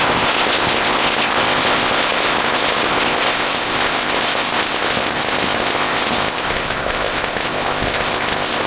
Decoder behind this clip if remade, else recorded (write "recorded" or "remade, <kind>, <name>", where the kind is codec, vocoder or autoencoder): remade, codec, ZipCodec